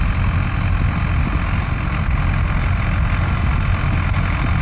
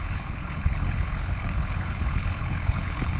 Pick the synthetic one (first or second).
second